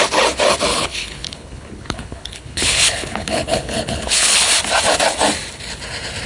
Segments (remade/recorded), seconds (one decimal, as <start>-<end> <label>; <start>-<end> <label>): 0.0-0.7 recorded; 0.7-4.5 remade; 4.5-6.3 recorded